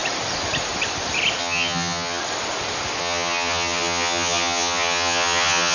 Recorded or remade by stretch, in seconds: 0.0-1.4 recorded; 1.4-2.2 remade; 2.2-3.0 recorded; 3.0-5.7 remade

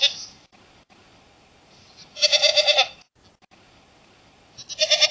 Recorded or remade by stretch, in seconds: 0.0-5.1 recorded